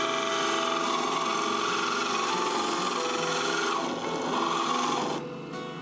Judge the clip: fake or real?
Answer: real